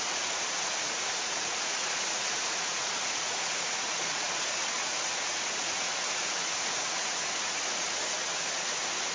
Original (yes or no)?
no